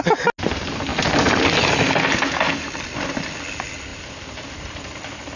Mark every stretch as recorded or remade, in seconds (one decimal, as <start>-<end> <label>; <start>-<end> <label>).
0.0-5.4 recorded